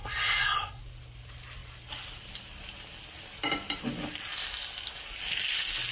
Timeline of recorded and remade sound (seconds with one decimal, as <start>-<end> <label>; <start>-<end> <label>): 0.0-0.8 remade; 0.8-5.9 recorded